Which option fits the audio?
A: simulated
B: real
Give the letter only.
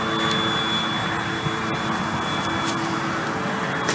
B